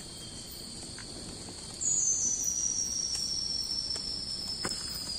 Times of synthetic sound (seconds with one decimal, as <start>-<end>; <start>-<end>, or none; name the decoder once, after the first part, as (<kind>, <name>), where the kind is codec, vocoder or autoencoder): 0.0-1.0 (vocoder, BigVGAN v2); 1.6-2.1; 4.3-5.2